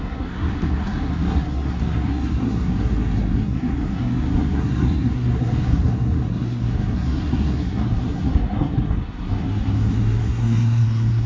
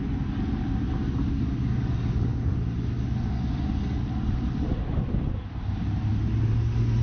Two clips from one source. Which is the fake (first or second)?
first